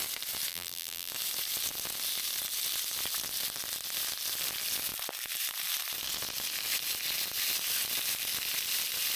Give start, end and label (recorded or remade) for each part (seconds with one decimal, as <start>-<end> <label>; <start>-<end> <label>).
0.0-0.5 recorded; 0.5-1.1 remade; 1.1-9.2 recorded